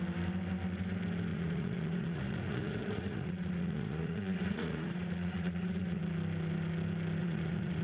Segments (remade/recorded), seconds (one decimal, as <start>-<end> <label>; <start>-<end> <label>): 0.0-1.3 recorded; 1.3-6.0 remade; 6.0-7.2 recorded; 7.2-7.8 remade

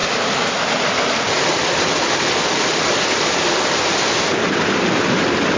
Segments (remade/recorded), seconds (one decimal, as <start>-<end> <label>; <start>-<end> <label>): 0.0-5.6 recorded